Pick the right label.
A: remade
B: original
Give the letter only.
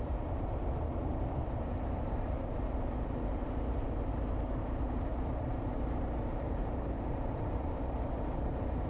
A